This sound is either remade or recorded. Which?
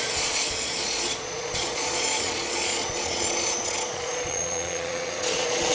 remade